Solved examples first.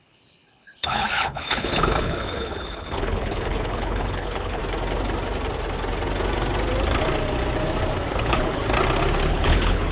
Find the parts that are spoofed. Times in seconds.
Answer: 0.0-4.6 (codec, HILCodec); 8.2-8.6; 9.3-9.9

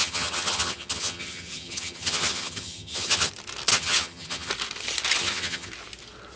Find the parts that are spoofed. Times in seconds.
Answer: 0.0-3.3 (vocoder, HiFi-GAN); 3.7-4.5; 5.2-5.7

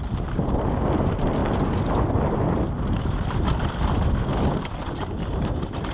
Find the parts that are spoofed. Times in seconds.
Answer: none

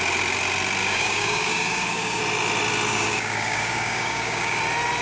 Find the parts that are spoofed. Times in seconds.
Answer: 0.8-2.2 (codec, DAC); 2.9-4.6